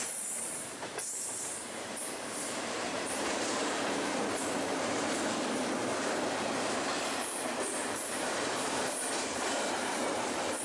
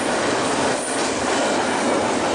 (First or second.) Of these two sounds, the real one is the second